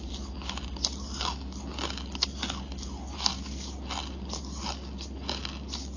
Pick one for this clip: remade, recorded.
recorded